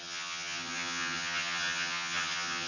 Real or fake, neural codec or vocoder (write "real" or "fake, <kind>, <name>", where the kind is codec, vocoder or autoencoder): fake, vocoder, HiFi-GAN